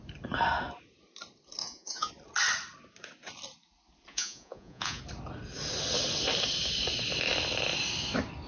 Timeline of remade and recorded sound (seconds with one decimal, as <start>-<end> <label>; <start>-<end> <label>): 0.0-1.6 recorded; 1.6-2.1 remade; 2.1-4.1 recorded; 4.1-5.0 remade; 5.0-8.5 recorded